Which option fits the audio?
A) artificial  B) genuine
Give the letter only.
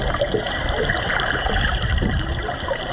B